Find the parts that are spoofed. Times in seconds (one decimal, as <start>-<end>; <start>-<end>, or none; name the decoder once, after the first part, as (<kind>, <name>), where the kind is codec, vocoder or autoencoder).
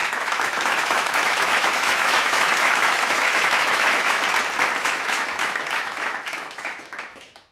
0.0-4.2 (autoencoder, DAC-VAE); 4.8-7.5